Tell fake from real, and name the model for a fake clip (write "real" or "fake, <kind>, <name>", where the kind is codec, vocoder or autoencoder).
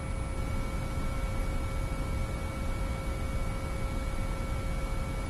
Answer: real